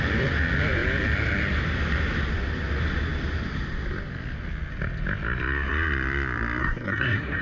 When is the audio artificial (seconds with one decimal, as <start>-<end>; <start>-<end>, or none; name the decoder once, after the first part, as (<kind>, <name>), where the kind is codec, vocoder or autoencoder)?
6.6-7.4 (codec, SNAC)